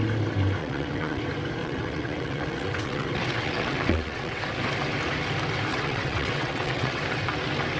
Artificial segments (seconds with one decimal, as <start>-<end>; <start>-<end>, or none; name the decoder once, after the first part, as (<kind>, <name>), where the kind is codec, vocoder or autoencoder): 0.6-1.2 (vocoder, WaveNeXt); 1.6-4.4; 5.7-7.0